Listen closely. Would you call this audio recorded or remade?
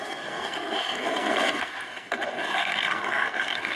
remade